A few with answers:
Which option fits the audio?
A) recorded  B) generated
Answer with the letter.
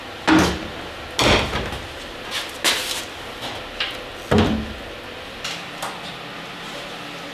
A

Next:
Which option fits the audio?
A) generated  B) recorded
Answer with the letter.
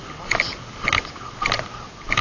B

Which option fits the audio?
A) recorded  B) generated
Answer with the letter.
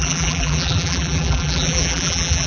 B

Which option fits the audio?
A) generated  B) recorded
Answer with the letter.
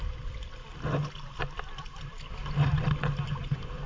B